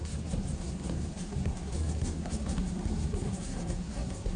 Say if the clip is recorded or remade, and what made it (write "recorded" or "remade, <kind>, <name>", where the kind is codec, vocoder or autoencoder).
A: remade, codec, SNAC